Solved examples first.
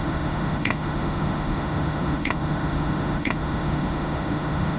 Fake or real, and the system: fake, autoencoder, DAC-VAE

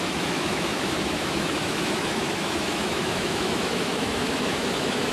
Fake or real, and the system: fake, autoencoder, DAC-VAE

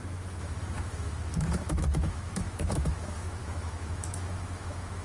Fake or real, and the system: fake, autoencoder, DAC-VAE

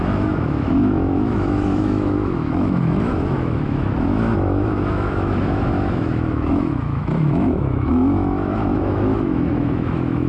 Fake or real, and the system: fake, autoencoder, DAC-VAE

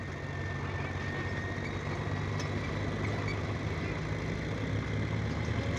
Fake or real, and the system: real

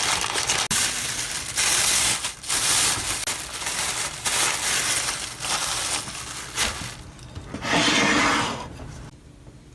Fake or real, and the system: real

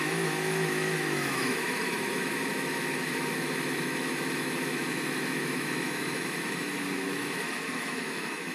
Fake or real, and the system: fake, autoencoder, DAC-VAE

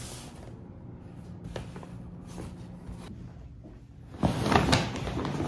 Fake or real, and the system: real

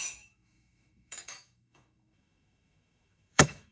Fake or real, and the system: fake, autoencoder, DAC-VAE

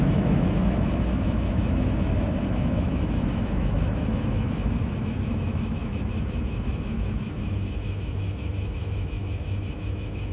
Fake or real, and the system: fake, autoencoder, DAC-VAE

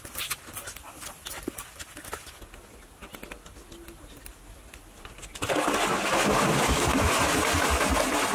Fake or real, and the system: real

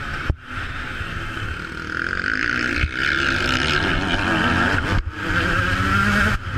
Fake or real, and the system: real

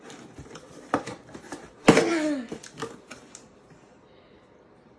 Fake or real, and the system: real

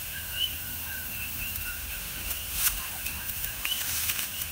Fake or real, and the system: fake, autoencoder, DAC-VAE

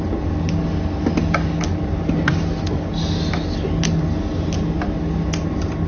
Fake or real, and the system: real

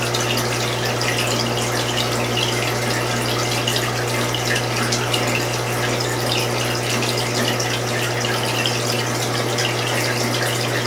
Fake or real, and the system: real